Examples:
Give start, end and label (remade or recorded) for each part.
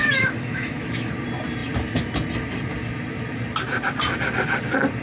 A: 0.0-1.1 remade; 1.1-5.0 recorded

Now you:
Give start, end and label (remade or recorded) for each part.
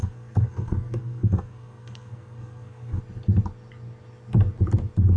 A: 0.0-3.0 remade; 3.0-5.2 recorded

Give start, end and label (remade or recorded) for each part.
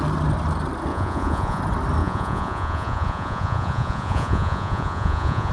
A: 0.0-0.9 recorded; 0.9-1.6 remade; 1.6-2.0 recorded; 2.0-5.5 remade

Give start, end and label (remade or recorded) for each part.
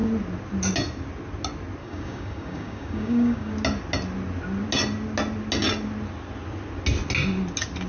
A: 0.0-1.8 recorded; 1.8-3.5 remade; 3.5-7.9 recorded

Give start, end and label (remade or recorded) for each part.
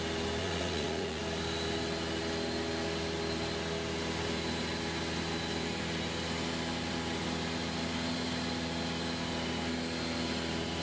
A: 0.0-0.4 recorded; 0.4-1.2 remade; 1.2-10.8 recorded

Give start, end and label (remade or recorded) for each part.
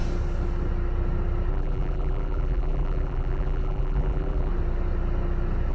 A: 0.0-1.5 recorded; 1.5-4.5 remade; 4.5-5.7 recorded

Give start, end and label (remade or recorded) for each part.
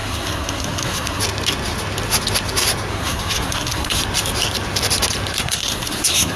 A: 0.0-1.2 remade; 1.2-2.9 recorded; 2.9-4.0 remade; 4.0-5.4 recorded; 5.4-6.4 remade